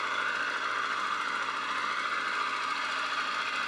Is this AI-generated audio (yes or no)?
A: no